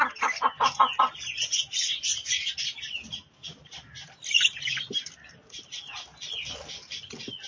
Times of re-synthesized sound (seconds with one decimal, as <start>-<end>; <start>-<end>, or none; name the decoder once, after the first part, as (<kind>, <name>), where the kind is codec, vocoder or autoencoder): none